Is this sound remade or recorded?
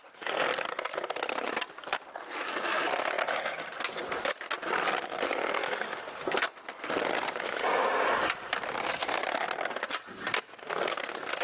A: recorded